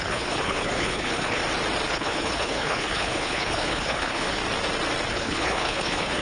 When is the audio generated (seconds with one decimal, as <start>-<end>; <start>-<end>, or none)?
0.0-1.4; 1.9-4.4; 5.1-6.2